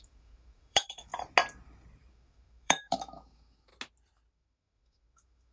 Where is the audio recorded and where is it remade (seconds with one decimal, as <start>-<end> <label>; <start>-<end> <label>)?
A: 0.0-1.1 remade; 1.1-2.1 recorded; 2.1-3.7 remade; 3.7-4.3 recorded; 4.3-5.5 remade